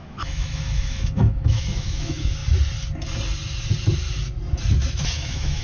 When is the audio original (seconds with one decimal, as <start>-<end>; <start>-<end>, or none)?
2.4-4.9